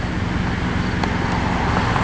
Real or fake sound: real